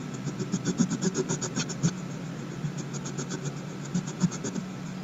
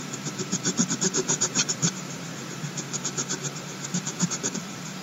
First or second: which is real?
first